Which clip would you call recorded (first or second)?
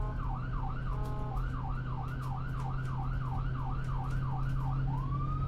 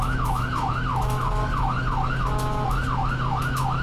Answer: first